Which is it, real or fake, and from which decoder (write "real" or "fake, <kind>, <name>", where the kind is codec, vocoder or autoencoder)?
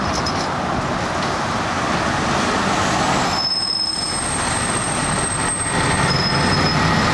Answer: real